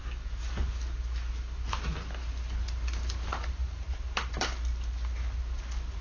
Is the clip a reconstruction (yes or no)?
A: no